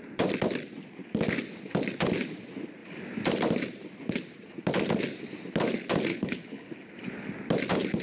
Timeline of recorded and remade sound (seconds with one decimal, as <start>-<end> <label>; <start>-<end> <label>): 0.0-6.1 recorded; 6.1-6.7 remade; 6.7-8.0 recorded